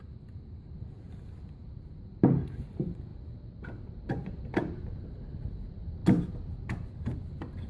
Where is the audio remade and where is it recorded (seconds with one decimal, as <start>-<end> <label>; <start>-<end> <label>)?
0.0-7.7 recorded